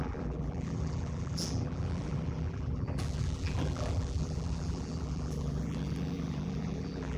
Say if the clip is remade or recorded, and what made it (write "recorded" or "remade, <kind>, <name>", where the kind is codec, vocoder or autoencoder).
remade, vocoder, BigVGAN v2